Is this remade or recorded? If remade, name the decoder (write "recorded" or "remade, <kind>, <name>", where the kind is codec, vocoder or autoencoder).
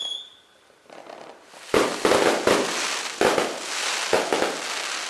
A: recorded